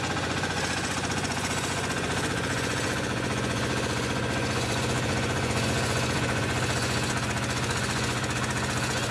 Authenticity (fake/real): fake